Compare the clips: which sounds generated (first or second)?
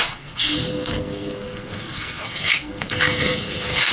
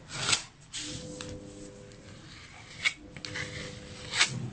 first